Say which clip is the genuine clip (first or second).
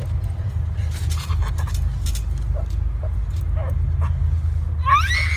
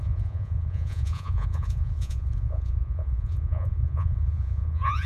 first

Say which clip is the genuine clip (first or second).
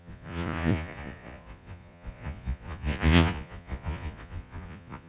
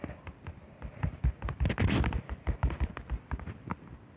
second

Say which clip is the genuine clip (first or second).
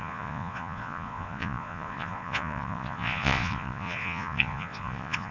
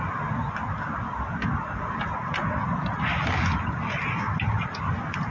second